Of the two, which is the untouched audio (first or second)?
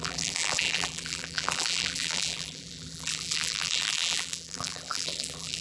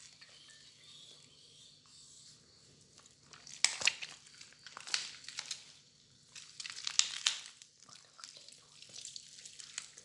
second